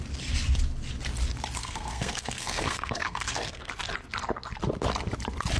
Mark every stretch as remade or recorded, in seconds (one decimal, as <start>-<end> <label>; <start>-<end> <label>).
0.0-1.6 recorded; 1.6-3.7 remade; 3.7-5.6 recorded